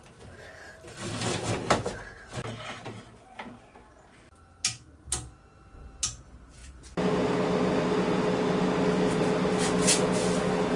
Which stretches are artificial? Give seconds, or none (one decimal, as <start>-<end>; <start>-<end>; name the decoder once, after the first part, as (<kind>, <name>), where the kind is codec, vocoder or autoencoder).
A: none